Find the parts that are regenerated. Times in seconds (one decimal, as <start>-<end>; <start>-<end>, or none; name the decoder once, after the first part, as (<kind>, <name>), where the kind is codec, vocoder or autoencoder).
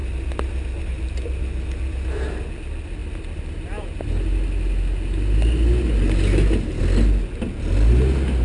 none